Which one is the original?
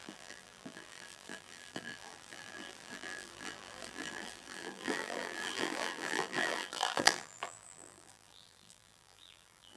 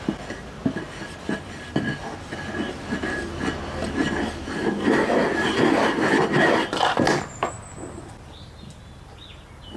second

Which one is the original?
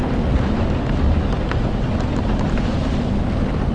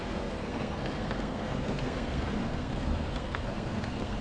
first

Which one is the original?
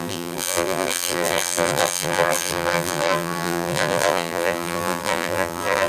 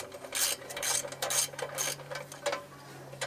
second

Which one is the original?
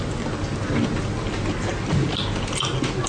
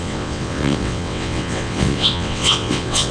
first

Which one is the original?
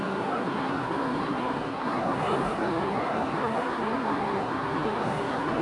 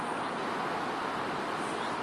second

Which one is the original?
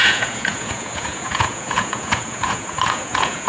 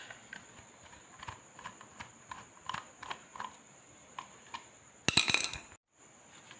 second